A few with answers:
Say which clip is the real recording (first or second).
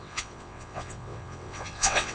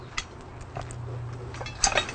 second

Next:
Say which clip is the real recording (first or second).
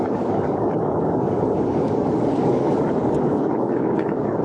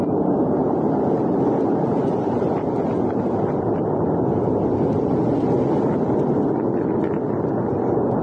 second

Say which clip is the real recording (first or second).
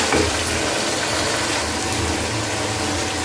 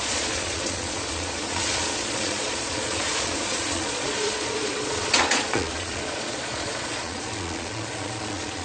first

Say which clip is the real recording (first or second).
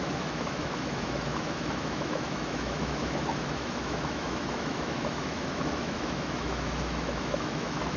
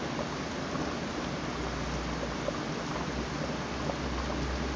second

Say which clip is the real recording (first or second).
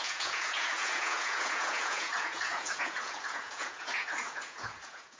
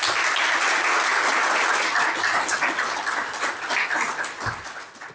second